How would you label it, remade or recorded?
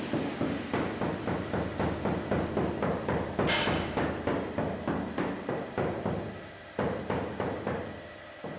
recorded